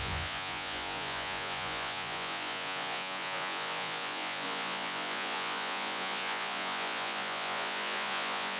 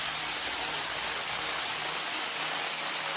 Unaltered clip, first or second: second